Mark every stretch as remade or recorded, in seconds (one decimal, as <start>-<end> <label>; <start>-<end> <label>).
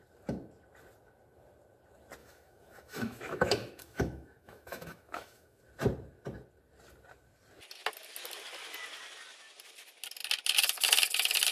0.0-2.2 recorded; 2.2-5.6 remade; 5.6-11.5 recorded